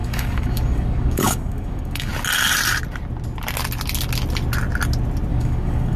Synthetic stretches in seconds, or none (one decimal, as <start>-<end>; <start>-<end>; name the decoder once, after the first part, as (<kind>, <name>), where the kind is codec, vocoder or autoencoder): 0.0-2.1 (codec, DAC); 5.3-6.0